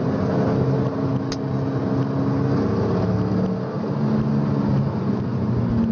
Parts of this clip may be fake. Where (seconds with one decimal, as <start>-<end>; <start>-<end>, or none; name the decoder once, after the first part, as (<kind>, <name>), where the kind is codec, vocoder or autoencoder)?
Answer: none